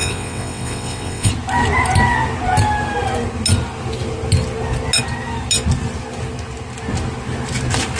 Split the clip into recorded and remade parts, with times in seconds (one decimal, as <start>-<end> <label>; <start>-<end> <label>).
0.0-1.3 remade; 1.3-8.0 recorded